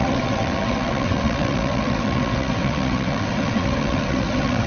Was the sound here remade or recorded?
remade